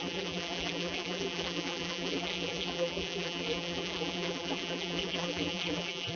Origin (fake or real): fake